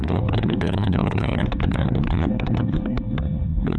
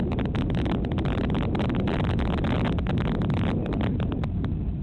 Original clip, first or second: second